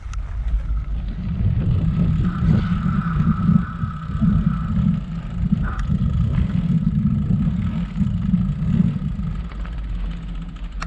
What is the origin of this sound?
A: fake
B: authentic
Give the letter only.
B